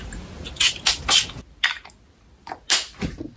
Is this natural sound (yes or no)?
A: yes